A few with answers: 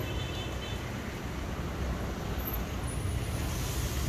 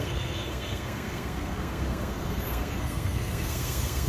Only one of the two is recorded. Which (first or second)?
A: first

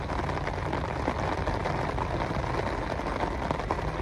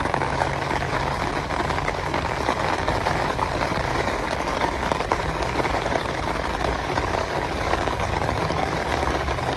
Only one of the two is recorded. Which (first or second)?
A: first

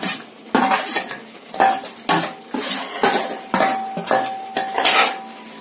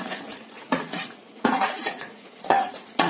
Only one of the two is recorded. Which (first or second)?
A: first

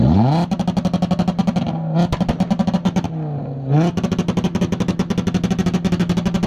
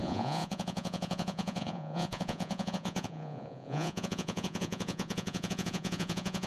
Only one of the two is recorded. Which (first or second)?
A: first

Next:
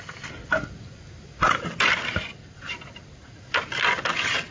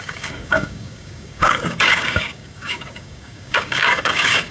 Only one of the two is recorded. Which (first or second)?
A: first